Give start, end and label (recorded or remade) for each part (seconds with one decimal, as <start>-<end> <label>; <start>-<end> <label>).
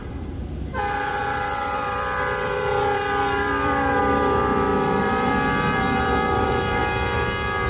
0.0-6.8 remade; 6.8-7.7 recorded